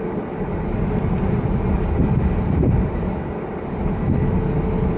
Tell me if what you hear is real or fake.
real